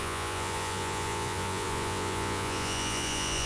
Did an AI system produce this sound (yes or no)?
yes